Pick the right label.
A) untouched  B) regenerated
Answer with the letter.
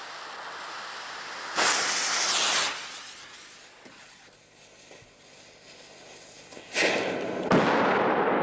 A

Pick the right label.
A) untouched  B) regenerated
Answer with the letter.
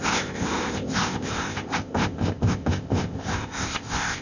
B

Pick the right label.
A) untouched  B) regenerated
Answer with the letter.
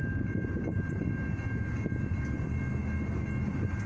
A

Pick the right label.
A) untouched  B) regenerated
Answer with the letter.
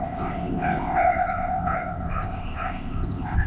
B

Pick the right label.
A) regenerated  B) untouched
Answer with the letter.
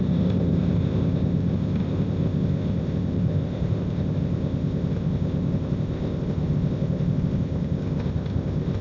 A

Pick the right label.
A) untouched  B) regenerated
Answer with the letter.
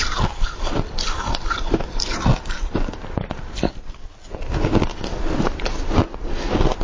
A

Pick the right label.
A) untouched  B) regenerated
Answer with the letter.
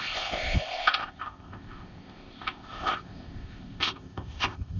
B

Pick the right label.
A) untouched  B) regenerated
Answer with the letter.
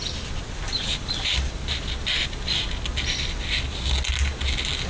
A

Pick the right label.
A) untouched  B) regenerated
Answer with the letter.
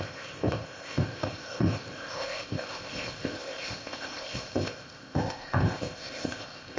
B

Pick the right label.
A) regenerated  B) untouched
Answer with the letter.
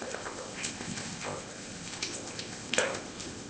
A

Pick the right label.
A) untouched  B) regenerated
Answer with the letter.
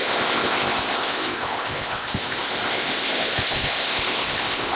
B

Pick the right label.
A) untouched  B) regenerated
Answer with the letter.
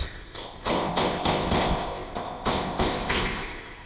B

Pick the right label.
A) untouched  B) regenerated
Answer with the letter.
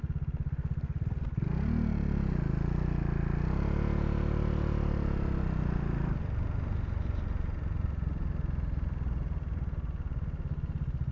A